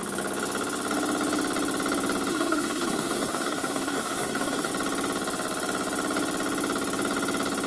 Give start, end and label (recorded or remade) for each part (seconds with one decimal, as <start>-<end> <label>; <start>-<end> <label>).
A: 0.0-2.3 recorded; 2.3-4.7 remade; 4.7-7.7 recorded